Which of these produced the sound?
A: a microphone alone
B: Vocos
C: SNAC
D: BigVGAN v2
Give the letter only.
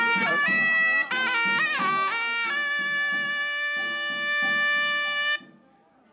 A